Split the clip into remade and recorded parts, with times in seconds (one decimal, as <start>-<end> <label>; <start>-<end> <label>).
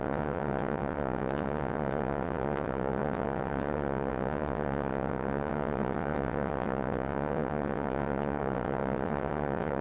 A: 0.0-9.8 remade